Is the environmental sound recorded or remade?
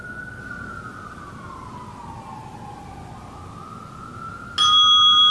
recorded